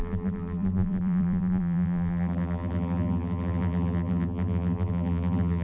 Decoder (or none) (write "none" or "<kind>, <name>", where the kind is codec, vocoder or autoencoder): vocoder, BigVGAN v2